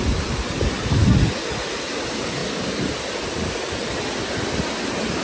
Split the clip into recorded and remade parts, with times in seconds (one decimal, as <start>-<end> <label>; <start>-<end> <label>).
0.0-5.2 recorded